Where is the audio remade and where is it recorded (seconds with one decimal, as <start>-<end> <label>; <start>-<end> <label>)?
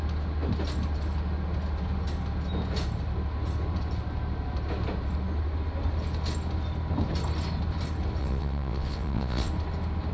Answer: 0.0-8.2 recorded; 8.2-9.5 remade; 9.5-10.1 recorded